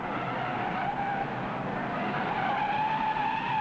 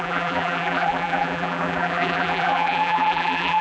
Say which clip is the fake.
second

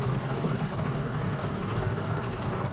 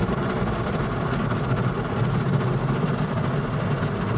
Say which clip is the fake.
first